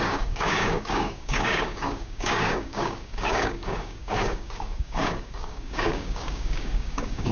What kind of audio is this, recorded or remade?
remade